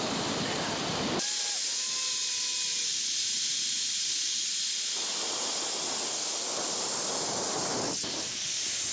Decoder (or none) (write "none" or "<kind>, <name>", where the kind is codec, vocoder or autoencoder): none